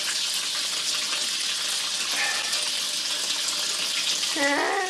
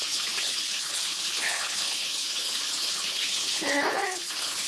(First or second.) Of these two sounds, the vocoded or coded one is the second